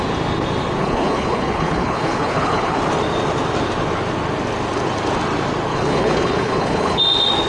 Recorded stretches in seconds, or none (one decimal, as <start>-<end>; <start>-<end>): 0.0-0.8; 2.8-5.7; 7.0-7.5